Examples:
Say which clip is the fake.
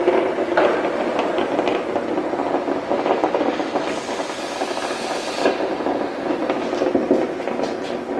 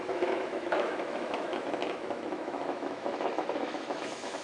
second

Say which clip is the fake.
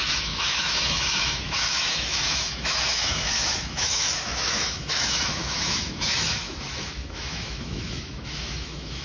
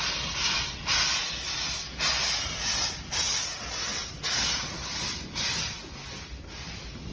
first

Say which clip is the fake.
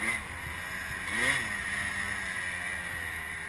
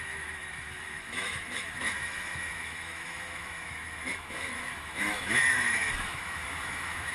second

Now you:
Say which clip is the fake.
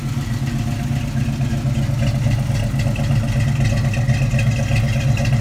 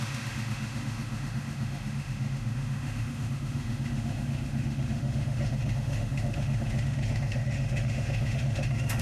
second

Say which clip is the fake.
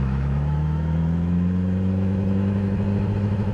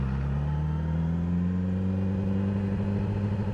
first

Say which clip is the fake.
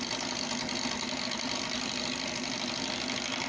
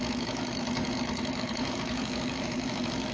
second